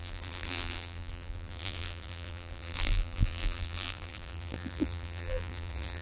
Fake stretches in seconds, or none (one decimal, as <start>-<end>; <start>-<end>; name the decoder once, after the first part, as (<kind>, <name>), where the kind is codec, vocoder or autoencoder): 0.0-6.0 (vocoder, BigVGAN v2)